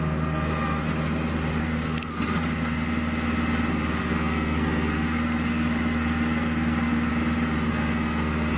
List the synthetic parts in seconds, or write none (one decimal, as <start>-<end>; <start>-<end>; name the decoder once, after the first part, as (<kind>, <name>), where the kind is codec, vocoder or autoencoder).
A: 1.6-2.4 (codec, SNAC); 4.0-7.1; 7.7-8.6